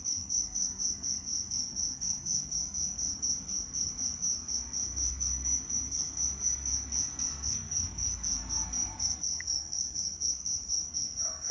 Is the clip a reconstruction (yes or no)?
yes